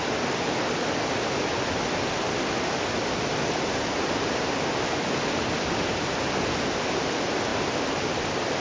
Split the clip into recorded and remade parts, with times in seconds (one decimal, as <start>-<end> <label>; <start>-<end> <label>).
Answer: 0.0-8.6 recorded